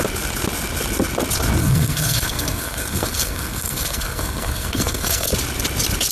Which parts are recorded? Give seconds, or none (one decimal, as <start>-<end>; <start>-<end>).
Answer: 0.0-1.6; 5.3-6.1